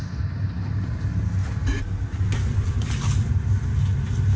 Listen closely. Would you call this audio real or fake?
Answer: real